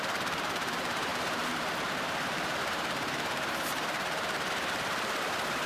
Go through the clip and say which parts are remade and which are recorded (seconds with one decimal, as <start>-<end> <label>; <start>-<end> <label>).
0.0-5.7 remade